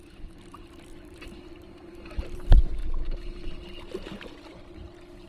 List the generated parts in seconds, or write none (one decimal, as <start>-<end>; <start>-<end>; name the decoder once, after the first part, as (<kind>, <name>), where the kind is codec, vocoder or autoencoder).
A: 0.0-2.8 (vocoder, BigVGAN v2)